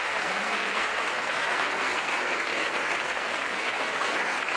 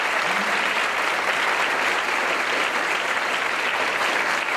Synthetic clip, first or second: first